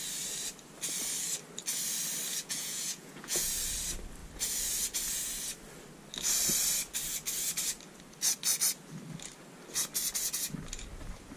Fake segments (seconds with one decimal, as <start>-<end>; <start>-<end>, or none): 2.3-3.5